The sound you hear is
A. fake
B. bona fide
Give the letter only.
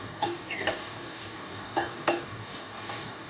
A